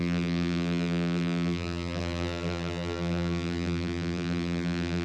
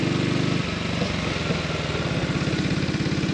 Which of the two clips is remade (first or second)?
first